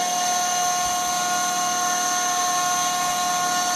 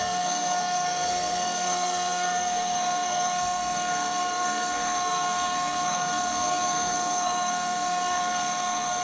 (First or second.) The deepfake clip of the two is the second